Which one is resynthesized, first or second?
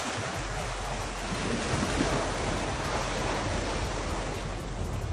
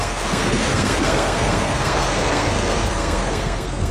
second